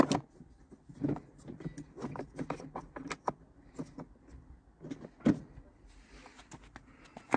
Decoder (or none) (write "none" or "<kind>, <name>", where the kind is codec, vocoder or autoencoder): none